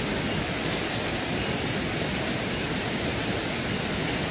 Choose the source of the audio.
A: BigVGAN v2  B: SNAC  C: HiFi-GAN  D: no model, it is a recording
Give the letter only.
D